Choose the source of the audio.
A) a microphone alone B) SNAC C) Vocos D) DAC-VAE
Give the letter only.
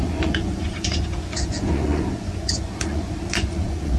C